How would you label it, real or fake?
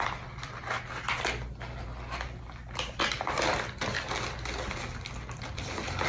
real